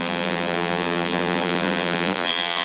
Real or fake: fake